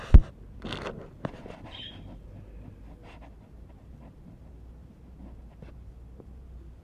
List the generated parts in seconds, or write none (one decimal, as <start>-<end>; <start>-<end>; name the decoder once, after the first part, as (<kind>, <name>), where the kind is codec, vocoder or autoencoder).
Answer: none